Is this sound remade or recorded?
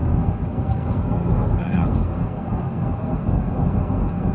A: remade